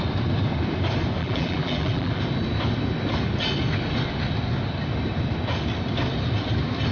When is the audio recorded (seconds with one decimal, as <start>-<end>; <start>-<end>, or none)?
0.0-1.2; 2.2-6.9

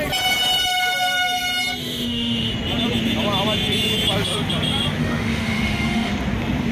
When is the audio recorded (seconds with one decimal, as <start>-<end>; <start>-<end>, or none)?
0.0-1.8; 2.5-5.0; 6.1-6.7

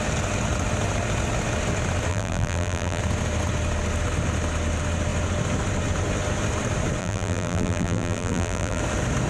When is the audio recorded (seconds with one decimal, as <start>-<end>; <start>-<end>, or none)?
0.0-2.1; 3.0-7.0; 8.8-9.3

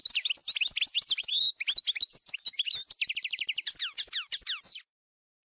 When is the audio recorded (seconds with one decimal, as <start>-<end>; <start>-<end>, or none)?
0.0-5.6

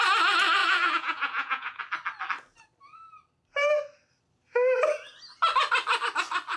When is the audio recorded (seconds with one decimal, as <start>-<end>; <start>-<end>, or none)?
0.0-0.6; 1.8-6.6

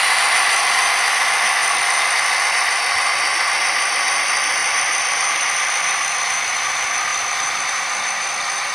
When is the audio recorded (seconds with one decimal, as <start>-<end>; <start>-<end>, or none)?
0.0-8.7

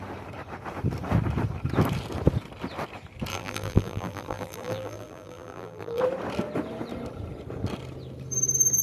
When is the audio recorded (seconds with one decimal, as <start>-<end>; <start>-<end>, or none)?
0.0-3.3; 6.0-8.8